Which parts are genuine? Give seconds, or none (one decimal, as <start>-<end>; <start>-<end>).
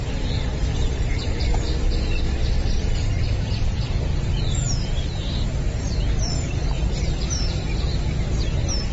0.0-0.7; 1.4-2.4; 7.1-8.9